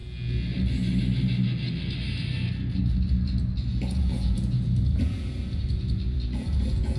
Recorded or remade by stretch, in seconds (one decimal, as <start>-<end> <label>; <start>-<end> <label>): 0.0-3.7 recorded; 3.7-7.0 remade